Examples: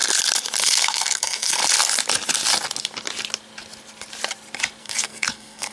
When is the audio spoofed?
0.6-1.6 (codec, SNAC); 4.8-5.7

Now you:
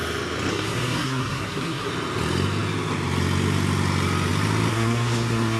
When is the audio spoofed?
0.5-1.9 (codec, SNAC); 4.7-5.6

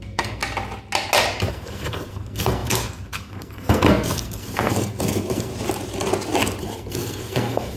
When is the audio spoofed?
0.0-0.4 (codec, SNAC); 1.5-5.5; 6.6-7.8

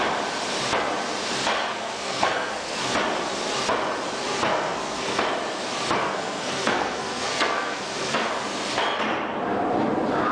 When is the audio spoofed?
1.7-2.9 (codec, SNAC); 4.5-5.2; 6.0-8.3